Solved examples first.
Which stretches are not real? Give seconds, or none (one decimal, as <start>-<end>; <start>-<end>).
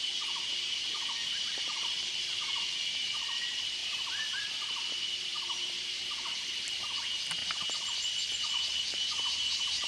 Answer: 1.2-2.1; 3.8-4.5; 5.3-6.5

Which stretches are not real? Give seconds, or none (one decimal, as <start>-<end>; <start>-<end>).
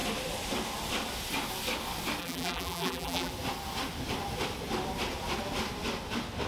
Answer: 2.2-3.3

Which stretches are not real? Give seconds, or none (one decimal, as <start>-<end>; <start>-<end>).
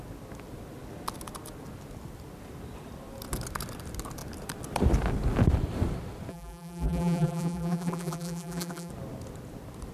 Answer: 6.3-8.9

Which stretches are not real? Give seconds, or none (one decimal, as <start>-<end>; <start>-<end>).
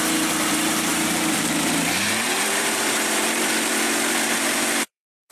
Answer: 0.0-5.3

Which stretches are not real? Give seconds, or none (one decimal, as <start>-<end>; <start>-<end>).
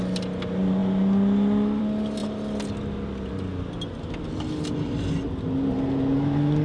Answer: none